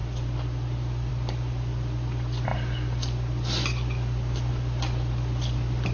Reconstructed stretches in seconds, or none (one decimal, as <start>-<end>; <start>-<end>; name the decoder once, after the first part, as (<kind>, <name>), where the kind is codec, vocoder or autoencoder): none